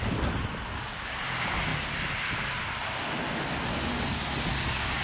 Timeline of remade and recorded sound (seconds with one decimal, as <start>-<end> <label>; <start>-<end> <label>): 0.0-5.0 recorded